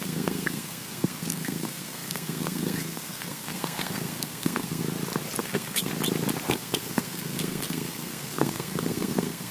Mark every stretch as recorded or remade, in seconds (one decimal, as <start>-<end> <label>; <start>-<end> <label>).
0.0-4.8 remade; 4.8-5.4 recorded; 5.4-5.9 remade; 5.9-6.5 recorded; 6.5-9.5 remade